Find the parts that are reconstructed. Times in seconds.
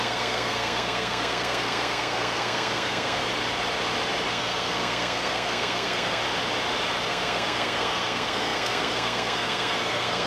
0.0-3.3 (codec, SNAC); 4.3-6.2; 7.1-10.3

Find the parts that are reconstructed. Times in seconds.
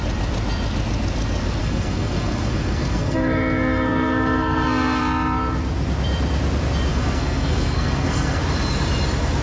1.6-5.0 (codec, SNAC); 6.9-8.4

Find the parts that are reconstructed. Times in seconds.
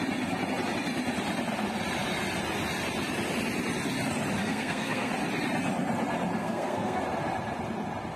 4.4-5.1 (codec, SNAC); 6.4-7.0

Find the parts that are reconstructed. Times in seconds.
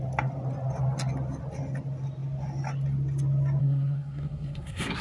3.6-5.0 (codec, SNAC)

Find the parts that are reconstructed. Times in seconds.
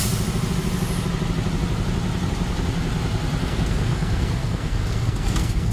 3.4-5.7 (codec, SNAC)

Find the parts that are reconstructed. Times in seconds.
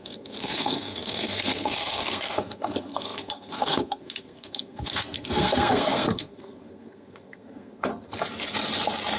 0.0-7.9 (codec, SNAC)